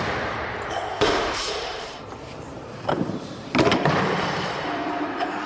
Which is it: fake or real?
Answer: fake